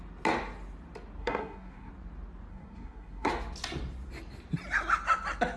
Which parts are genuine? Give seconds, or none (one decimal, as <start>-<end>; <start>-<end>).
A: 0.0-1.2; 1.9-2.5; 3.3-5.6

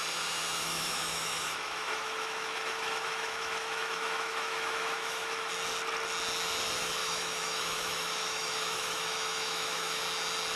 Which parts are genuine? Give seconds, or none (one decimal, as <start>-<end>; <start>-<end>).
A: 0.0-0.6; 5.5-7.0; 10.0-10.6